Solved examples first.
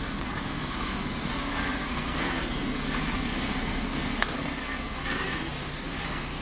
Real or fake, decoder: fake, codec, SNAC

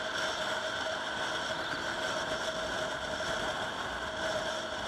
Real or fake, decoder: real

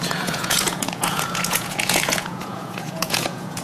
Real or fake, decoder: fake, vocoder, Vocos